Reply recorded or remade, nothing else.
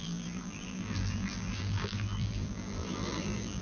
remade